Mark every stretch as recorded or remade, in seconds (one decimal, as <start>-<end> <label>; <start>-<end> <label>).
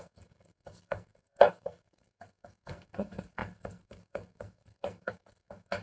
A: 0.0-5.8 remade